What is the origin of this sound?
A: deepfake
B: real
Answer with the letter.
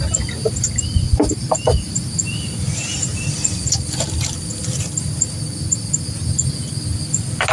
B